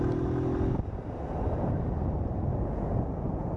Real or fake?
real